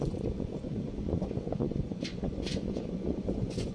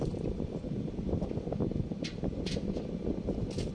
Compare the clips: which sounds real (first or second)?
second